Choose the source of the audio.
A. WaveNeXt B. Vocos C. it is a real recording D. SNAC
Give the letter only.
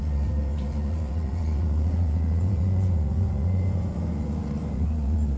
B